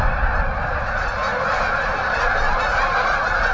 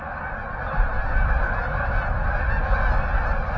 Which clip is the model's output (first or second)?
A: first